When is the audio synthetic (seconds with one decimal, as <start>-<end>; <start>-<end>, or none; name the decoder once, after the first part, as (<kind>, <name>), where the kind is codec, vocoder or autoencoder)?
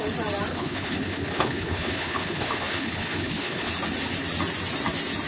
0.5-3.7 (codec, HILCodec)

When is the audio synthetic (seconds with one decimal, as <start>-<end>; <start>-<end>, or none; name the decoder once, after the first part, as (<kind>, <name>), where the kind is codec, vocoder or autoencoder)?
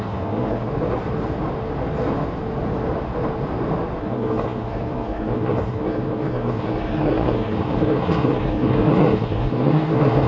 0.0-0.7 (codec, SNAC); 4.0-10.3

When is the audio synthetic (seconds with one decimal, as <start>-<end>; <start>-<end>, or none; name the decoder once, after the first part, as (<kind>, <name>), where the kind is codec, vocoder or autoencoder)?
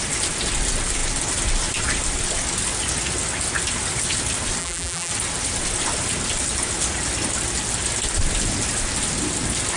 4.6-5.1 (vocoder, BigVGAN v2)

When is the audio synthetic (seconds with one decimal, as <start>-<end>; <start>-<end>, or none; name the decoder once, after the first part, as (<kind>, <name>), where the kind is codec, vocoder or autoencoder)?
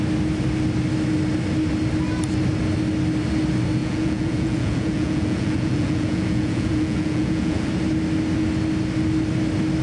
3.8-7.7 (vocoder, Vocos)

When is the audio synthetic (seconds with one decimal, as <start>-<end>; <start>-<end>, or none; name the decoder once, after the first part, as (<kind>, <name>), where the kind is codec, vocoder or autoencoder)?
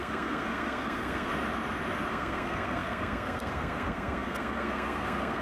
0.0-1.3 (codec, SNAC); 2.1-5.4